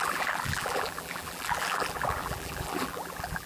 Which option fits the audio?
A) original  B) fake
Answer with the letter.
B